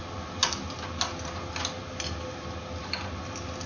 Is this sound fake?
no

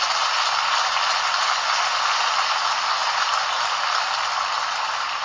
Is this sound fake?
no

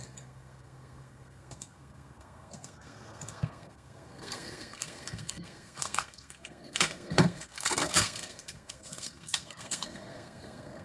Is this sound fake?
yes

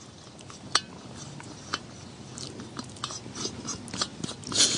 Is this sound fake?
no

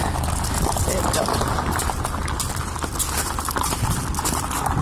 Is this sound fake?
yes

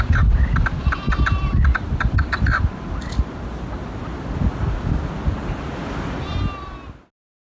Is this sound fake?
no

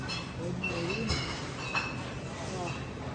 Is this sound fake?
no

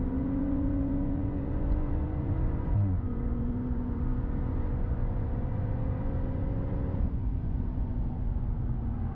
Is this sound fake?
yes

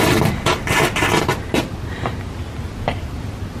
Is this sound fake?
no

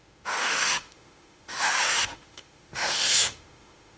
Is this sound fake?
yes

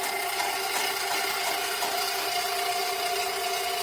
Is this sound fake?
no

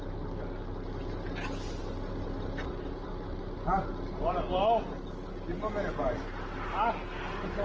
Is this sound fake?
no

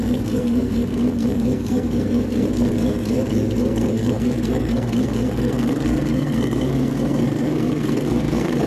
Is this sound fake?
yes